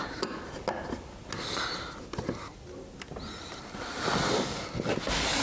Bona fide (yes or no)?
yes